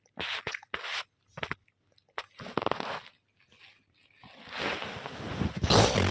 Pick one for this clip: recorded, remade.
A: recorded